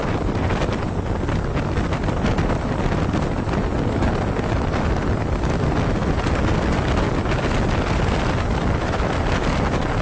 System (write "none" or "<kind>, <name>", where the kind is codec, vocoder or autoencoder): none